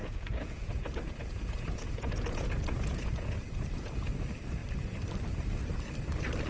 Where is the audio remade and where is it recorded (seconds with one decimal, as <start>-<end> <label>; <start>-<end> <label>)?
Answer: 0.0-3.9 remade; 3.9-6.5 recorded